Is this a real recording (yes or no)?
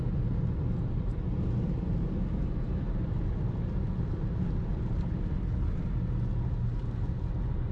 yes